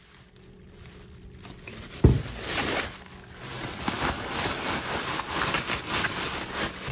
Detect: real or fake real